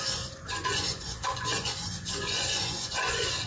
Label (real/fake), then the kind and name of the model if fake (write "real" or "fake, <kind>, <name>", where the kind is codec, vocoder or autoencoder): fake, vocoder, Vocos